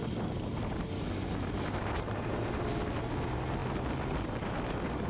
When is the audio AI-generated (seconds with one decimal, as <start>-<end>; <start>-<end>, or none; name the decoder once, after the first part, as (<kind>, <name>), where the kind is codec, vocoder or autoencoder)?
none